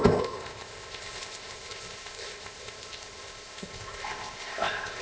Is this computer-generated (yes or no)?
yes